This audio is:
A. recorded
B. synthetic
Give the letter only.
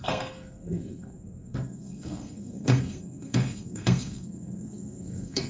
B